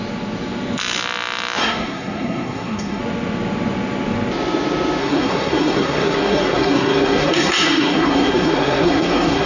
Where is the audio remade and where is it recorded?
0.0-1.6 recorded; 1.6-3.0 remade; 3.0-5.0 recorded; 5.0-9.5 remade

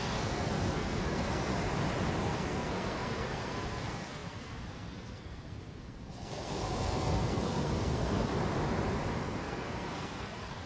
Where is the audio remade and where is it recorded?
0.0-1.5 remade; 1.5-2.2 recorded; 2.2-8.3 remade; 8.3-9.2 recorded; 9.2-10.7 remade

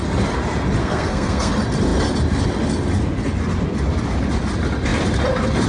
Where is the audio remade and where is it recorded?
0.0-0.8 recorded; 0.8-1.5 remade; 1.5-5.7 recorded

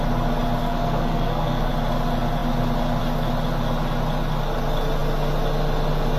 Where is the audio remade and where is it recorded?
0.0-0.6 recorded; 0.6-1.7 remade; 1.7-6.2 recorded

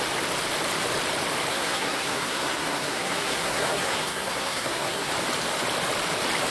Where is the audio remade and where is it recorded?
0.0-1.5 recorded; 1.5-5.1 remade; 5.1-6.5 recorded

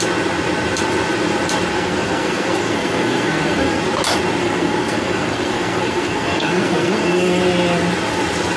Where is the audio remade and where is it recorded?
0.0-1.7 recorded; 1.7-3.8 remade; 3.8-4.4 recorded; 4.4-7.4 remade; 7.4-8.6 recorded